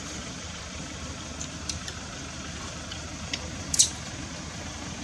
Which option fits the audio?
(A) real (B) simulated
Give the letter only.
B